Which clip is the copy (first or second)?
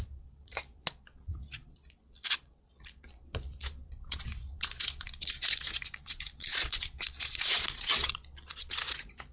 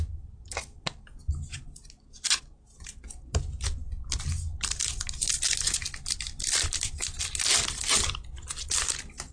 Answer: first